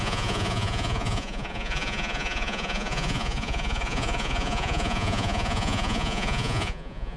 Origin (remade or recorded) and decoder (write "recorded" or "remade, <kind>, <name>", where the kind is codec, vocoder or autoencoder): remade, vocoder, Vocos